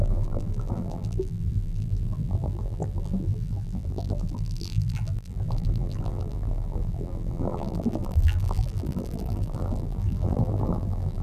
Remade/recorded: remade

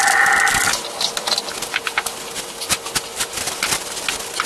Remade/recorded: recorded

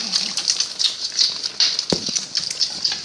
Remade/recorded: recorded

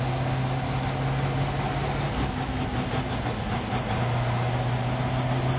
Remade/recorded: recorded